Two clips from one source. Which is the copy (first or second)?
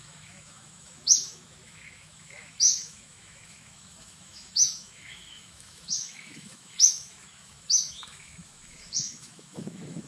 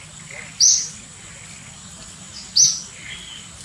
first